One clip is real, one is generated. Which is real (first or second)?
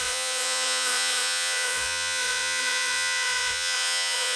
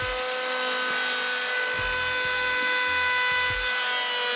second